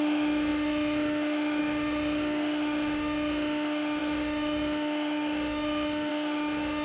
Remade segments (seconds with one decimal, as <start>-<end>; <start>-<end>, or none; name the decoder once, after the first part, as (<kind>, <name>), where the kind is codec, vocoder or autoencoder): 0.0-6.8 (autoencoder, DAC-VAE)